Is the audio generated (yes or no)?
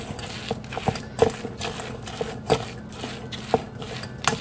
no